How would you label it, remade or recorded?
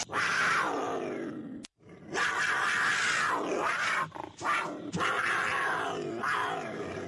recorded